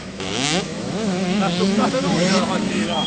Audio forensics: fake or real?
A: fake